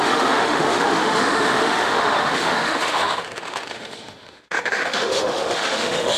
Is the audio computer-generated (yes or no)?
yes